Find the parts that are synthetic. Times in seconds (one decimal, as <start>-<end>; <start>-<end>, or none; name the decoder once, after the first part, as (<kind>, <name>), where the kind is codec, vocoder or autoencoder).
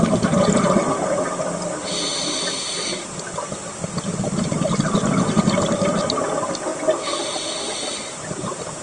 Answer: none